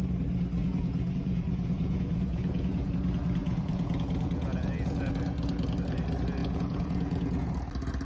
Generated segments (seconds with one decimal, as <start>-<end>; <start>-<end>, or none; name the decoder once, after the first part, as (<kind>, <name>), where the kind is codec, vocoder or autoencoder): 0.6-2.9 (vocoder, Vocos); 3.4-5.1; 6.4-7.5